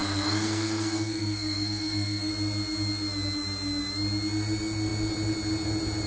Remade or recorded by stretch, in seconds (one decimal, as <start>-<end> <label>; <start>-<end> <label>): 0.0-2.3 remade; 2.3-6.1 recorded